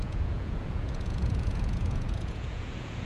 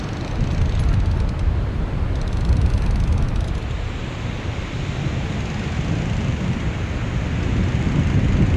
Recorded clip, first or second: second